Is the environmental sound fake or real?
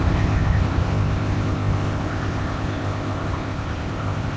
fake